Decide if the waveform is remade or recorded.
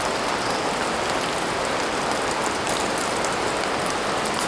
recorded